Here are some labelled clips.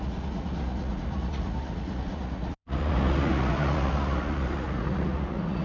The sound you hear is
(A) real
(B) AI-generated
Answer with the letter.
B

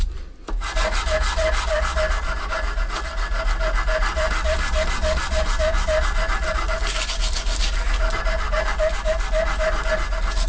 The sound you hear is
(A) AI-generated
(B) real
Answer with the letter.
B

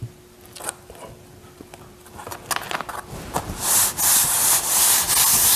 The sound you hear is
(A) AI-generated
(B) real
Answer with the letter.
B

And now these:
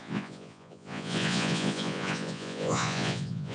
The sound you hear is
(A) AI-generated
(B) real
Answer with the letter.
A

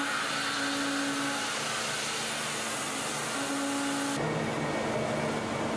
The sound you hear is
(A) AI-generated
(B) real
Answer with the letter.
B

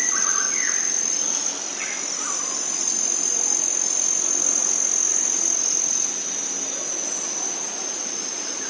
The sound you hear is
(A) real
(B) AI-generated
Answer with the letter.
A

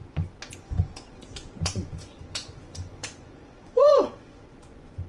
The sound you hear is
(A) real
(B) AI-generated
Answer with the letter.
B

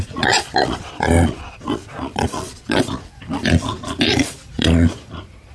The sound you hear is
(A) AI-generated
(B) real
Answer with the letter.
A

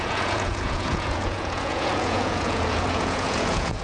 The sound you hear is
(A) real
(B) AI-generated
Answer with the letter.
B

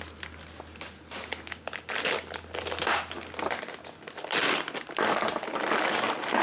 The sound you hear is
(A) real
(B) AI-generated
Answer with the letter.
A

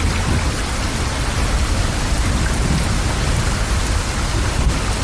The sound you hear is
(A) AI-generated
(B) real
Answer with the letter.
B